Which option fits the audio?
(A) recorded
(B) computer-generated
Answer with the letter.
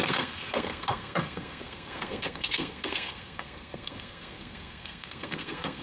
B